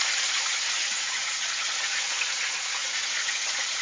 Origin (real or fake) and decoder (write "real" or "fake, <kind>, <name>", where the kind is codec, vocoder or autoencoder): fake, vocoder, Vocos